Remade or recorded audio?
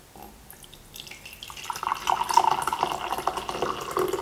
recorded